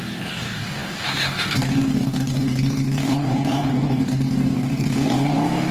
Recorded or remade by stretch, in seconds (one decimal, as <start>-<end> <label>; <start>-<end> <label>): 0.0-5.7 remade